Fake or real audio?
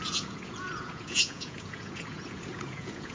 fake